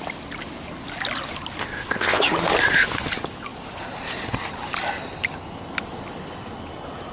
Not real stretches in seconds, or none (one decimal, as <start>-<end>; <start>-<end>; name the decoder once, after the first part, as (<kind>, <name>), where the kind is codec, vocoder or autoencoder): 1.6-2.2 (codec, ZipCodec)